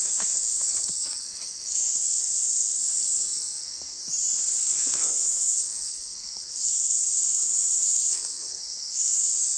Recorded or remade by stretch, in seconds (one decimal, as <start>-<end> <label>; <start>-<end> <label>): 0.0-4.0 remade; 4.0-4.6 recorded; 4.6-9.6 remade